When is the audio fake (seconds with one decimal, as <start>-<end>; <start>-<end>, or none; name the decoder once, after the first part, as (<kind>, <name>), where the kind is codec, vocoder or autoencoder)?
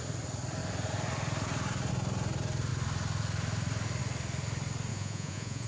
4.9-5.7 (vocoder, Vocos)